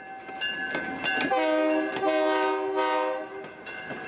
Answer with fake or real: real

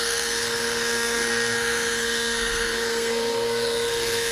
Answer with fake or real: fake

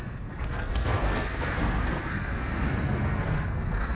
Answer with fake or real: fake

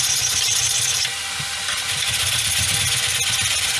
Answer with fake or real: real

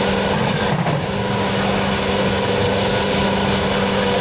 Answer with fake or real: real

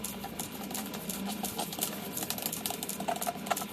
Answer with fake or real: real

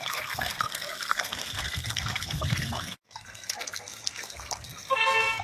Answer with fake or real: fake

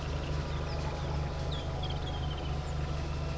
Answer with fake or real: real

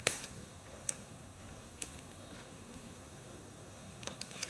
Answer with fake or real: fake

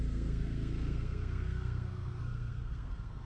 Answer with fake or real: fake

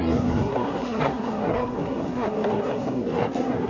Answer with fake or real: fake